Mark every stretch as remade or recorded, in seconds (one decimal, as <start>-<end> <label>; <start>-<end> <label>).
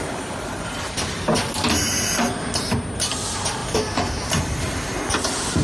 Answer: 0.0-5.6 recorded